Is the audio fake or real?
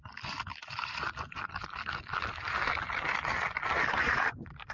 real